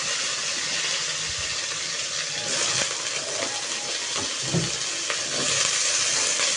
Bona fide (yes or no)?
yes